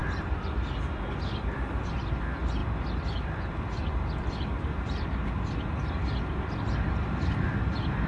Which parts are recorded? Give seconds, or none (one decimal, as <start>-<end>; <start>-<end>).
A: 0.0-8.1

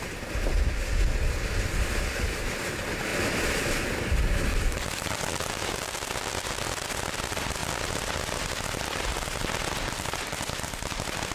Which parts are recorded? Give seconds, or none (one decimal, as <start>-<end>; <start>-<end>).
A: 0.0-4.5; 5.0-11.3